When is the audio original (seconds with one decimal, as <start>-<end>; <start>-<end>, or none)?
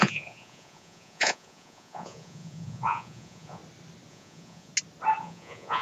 3.6-4.1; 4.7-5.2